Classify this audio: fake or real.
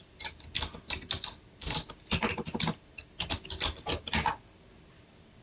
real